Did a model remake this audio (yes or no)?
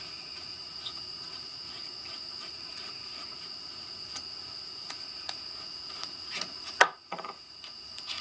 yes